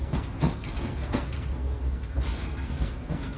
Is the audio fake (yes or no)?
yes